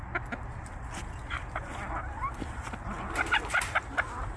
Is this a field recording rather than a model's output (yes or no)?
yes